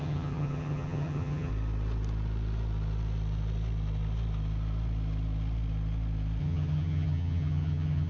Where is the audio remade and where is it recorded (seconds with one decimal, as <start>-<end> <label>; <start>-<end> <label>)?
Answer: 0.0-1.5 remade; 1.5-6.4 recorded; 6.4-8.1 remade